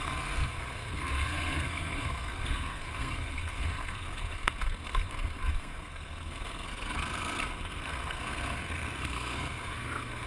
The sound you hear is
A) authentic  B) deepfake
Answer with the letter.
B